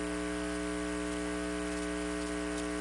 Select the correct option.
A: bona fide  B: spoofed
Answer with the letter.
A